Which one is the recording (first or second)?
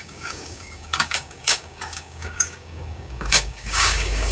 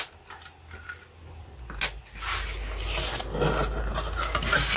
second